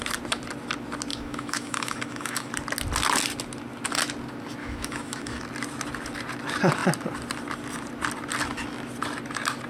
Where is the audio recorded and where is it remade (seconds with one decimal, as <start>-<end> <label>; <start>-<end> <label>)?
0.0-1.1 recorded; 1.1-2.5 remade; 2.5-4.6 recorded; 4.6-5.4 remade; 5.4-9.7 recorded